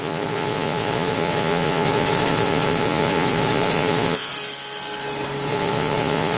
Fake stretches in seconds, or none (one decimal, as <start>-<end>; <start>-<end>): 0.0-4.3; 5.5-6.4